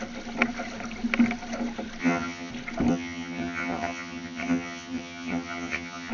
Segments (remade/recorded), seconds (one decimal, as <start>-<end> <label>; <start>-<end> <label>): 0.0-2.0 recorded; 2.0-2.5 remade; 2.5-2.9 recorded; 2.9-6.1 remade